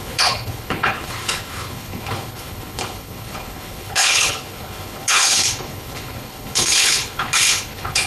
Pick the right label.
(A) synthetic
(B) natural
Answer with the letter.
A